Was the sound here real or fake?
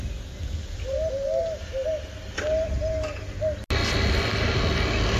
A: real